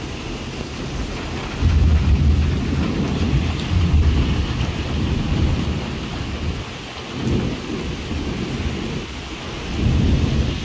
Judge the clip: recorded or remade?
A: recorded